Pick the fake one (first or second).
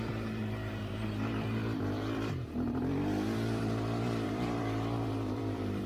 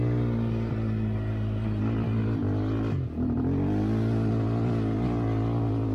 first